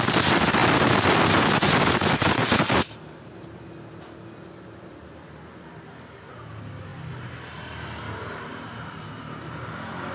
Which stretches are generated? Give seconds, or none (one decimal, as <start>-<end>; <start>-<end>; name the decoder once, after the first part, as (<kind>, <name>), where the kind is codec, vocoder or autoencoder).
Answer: none

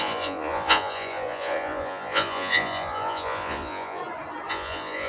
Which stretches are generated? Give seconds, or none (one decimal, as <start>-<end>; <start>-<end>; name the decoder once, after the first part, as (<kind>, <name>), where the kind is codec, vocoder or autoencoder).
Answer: 0.0-4.0 (vocoder, Vocos); 4.5-5.1

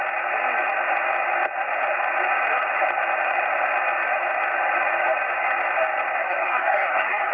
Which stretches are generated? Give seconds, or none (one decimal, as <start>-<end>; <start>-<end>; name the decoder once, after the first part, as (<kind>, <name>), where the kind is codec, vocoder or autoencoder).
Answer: 6.2-7.3 (codec, SNAC)

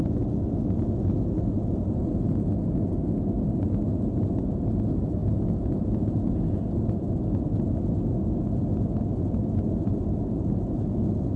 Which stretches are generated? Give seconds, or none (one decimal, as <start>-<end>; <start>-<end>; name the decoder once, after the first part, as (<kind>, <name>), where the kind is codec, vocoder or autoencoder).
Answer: 5.2-6.7 (vocoder, Vocos)

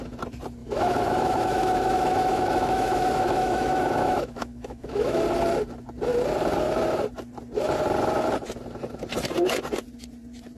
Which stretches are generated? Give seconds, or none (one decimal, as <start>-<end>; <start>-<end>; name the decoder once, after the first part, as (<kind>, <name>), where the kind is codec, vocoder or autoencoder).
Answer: 0.6-5.2 (autoencoder, DAC-VAE)

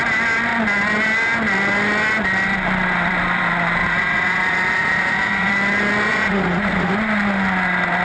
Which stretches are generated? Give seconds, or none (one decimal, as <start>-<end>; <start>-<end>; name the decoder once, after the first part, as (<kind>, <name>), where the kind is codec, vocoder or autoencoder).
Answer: 3.8-5.5 (vocoder, Vocos); 6.1-6.9

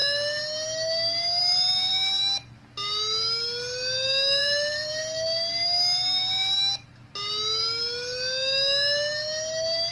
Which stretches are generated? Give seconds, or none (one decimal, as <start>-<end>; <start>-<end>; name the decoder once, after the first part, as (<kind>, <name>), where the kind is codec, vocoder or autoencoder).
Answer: 1.4-1.9 (vocoder, BigVGAN v2); 4.4-5.0

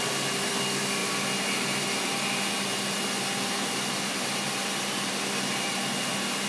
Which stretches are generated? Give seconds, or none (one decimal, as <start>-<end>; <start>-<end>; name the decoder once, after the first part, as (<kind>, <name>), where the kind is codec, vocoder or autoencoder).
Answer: none